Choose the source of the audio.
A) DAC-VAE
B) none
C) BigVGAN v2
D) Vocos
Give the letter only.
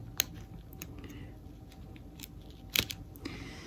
B